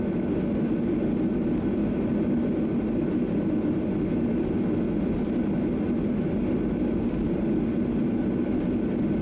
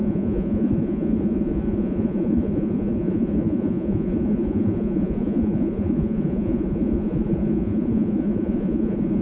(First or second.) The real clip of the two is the first